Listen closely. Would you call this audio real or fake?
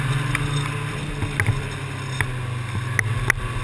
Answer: real